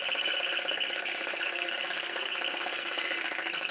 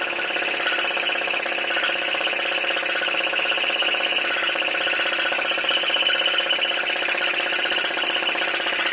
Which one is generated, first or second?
first